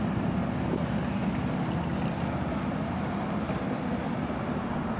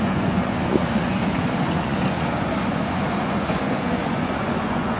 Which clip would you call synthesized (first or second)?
second